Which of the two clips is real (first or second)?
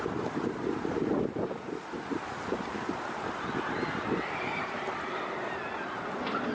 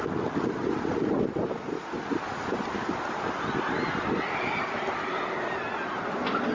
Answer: second